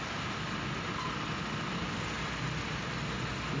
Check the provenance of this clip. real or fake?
real